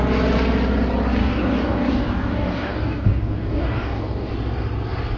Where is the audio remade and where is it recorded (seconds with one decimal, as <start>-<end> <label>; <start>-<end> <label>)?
0.0-1.2 recorded; 1.2-4.3 remade; 4.3-5.2 recorded